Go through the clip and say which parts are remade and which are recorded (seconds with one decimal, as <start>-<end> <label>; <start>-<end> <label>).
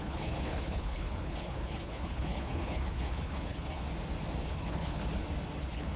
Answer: 0.0-3.8 remade; 3.8-4.4 recorded; 4.4-5.0 remade; 5.0-5.6 recorded; 5.6-6.0 remade